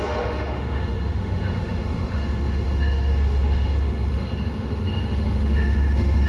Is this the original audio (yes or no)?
no